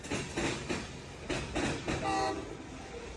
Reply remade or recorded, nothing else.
recorded